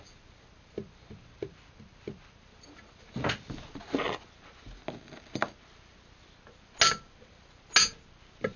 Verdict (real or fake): real